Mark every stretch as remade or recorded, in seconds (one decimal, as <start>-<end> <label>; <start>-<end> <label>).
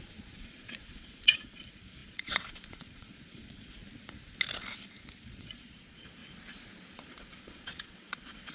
0.0-3.8 remade; 3.8-5.2 recorded; 5.2-6.2 remade; 6.2-6.9 recorded; 6.9-8.5 remade